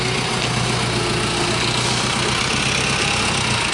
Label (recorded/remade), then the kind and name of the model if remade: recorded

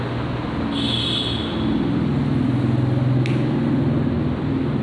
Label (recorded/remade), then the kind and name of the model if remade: recorded